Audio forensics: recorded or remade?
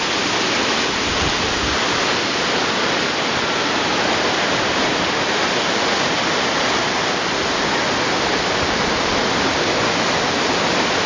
recorded